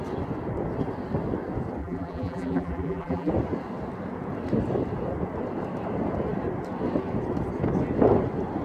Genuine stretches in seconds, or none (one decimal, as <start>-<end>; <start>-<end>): 0.0-1.8; 3.3-8.6